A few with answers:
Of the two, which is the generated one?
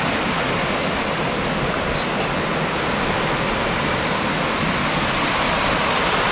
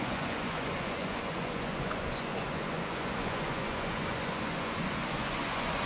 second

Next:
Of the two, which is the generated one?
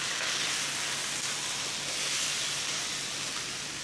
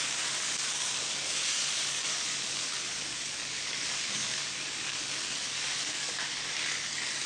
second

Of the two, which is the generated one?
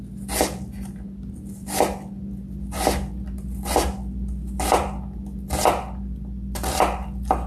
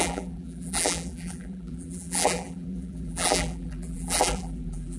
second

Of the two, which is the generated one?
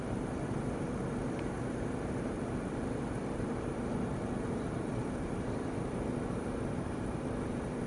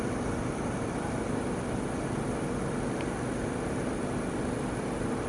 first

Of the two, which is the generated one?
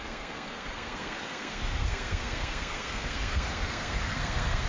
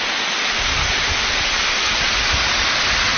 first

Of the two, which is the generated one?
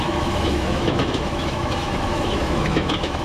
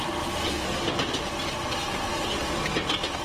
first